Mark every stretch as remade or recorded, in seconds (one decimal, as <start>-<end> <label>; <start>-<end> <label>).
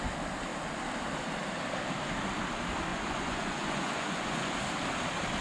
0.0-2.9 recorded; 2.9-4.5 remade; 4.5-5.4 recorded